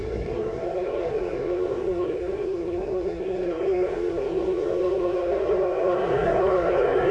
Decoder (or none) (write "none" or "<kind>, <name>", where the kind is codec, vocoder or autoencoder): codec, SNAC